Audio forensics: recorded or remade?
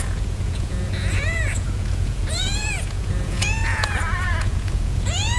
remade